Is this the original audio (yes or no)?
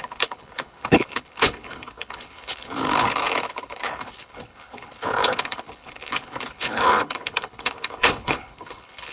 no